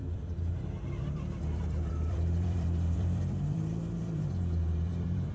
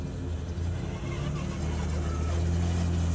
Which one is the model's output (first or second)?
first